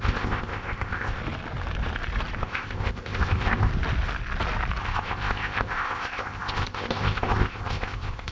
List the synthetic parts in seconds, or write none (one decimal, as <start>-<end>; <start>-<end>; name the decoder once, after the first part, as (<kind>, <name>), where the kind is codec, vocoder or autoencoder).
0.0-1.2 (codec, ZipCodec); 2.4-3.7; 4.8-8.3